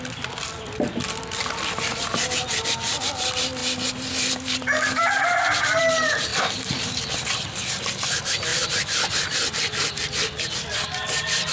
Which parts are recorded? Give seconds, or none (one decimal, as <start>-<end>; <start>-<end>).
0.0-5.0; 5.8-6.3; 7.3-8.5; 10.4-11.5